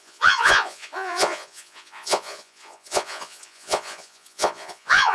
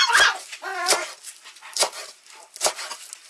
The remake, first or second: first